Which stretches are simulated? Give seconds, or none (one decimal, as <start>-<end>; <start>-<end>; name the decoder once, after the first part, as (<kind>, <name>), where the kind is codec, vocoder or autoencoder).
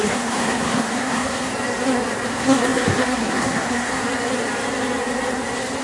0.0-1.5 (codec, SNAC); 2.3-4.0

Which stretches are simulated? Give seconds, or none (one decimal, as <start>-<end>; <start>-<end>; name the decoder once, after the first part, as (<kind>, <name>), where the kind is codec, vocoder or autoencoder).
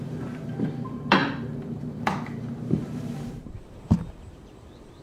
0.0-5.0 (vocoder, BigVGAN v2)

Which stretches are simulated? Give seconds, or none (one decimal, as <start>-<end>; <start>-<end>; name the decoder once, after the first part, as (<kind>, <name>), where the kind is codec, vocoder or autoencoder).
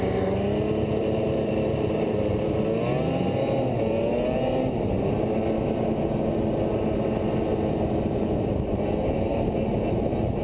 1.0-2.6 (vocoder, BigVGAN v2)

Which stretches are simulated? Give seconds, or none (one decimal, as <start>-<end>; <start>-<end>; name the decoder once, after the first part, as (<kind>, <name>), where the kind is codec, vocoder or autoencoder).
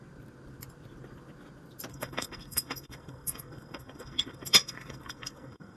1.9-5.8 (codec, SNAC)